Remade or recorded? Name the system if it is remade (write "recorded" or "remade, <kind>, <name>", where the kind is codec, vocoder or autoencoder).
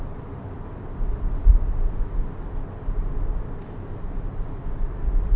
recorded